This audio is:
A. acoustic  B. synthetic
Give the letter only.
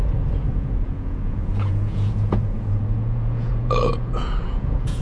B